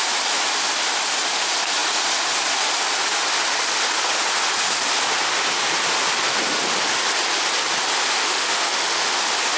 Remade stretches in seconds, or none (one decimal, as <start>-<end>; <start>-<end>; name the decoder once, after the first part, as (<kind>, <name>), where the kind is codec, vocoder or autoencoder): 8.2-9.1 (autoencoder, DAC-VAE)